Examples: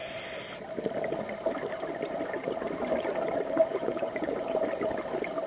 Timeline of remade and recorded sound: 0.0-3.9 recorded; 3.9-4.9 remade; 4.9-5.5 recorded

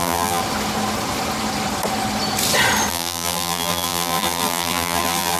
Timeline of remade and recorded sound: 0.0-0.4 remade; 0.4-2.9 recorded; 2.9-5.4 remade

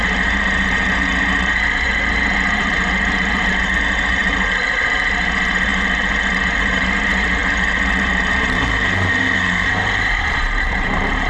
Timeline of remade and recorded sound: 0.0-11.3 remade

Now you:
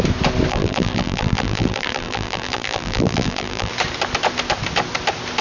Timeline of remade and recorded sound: 0.0-0.5 recorded; 0.5-3.7 remade; 3.7-5.4 recorded

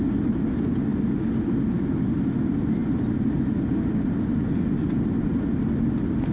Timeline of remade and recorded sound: 0.0-6.3 recorded

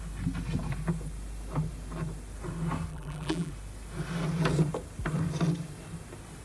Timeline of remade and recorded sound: 0.0-2.9 recorded; 2.9-3.5 remade; 3.5-6.4 recorded

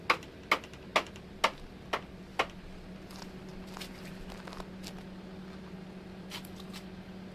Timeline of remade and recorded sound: 0.0-7.3 recorded